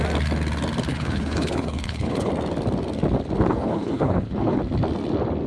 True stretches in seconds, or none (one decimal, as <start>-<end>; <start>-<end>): 0.0-0.9; 2.3-3.5; 4.6-5.5